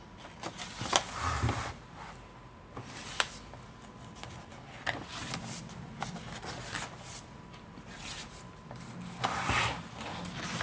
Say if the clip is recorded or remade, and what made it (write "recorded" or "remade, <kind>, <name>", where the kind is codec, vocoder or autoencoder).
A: recorded